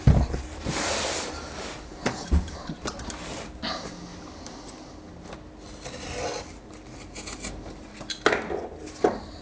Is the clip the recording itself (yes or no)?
yes